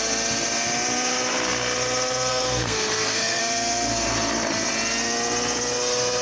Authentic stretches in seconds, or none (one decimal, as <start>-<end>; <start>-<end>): 0.0-2.3; 3.4-6.2